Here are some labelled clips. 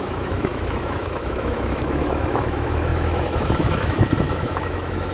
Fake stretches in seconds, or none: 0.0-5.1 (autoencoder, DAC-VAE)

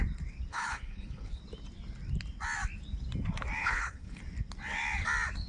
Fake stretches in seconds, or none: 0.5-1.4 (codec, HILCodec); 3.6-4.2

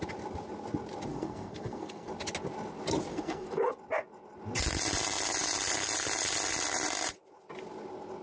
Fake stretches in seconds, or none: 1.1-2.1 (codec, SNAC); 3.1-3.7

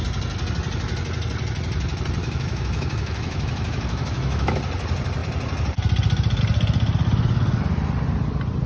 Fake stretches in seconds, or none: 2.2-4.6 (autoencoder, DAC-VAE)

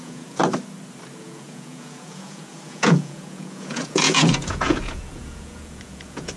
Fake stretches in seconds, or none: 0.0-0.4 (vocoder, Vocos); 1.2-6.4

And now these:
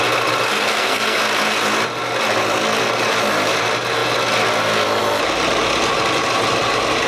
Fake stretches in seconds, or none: 0.5-1.2 (codec, SNAC)